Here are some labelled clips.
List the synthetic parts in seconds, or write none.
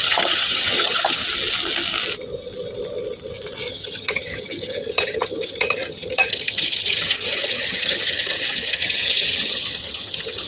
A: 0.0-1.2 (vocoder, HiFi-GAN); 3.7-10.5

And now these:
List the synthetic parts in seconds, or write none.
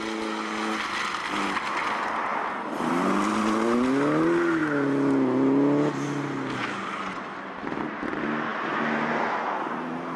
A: 2.3-2.9 (vocoder, BigVGAN v2)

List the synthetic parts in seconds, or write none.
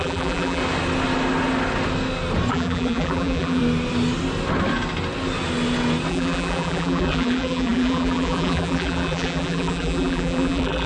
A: 0.0-0.6 (vocoder, BigVGAN v2); 2.5-3.6; 6.1-10.9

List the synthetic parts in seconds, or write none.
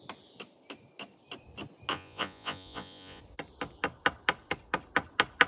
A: 1.9-3.2 (vocoder, Vocos)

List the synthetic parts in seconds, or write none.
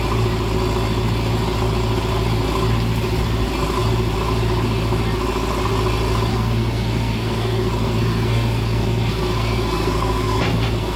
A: 6.3-11.0 (codec, SNAC)